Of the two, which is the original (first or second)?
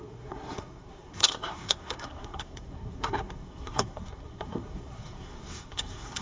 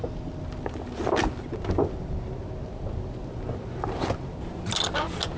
second